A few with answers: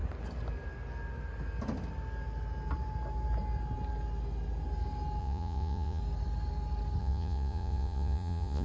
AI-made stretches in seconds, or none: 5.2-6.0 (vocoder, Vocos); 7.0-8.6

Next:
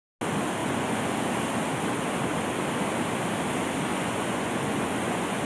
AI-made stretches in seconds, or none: 0.6-1.3 (vocoder, Vocos); 3.9-5.4

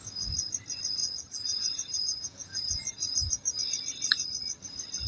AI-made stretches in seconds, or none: 1.0-3.6 (vocoder, Vocos)